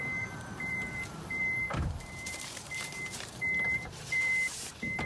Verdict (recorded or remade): remade